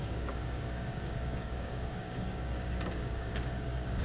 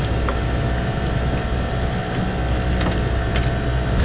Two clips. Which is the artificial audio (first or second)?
first